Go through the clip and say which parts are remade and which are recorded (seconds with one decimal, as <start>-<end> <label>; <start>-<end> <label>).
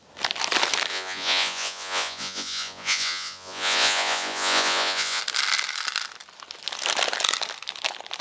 0.0-0.9 recorded; 0.9-5.2 remade; 5.2-8.2 recorded